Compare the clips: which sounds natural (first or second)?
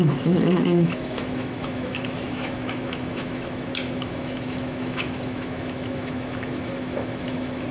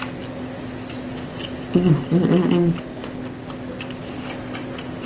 second